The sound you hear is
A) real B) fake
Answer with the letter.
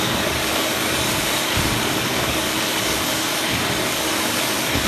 B